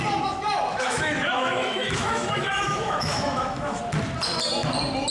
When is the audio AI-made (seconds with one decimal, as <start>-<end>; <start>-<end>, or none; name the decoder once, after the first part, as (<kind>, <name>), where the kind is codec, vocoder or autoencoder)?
0.7-3.8 (autoencoder, DAC-VAE)